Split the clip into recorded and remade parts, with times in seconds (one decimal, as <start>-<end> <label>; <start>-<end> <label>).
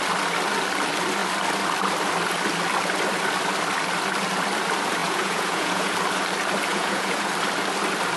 0.0-5.0 recorded; 5.0-5.9 remade; 5.9-6.7 recorded; 6.7-7.3 remade; 7.3-8.2 recorded